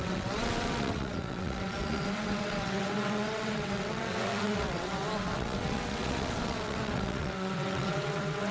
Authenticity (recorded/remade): remade